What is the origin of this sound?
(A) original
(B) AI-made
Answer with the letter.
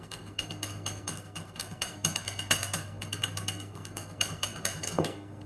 B